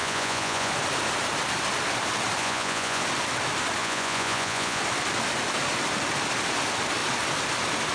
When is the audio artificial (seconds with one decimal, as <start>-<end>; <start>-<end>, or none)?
0.0-0.7; 2.4-3.0; 3.8-4.8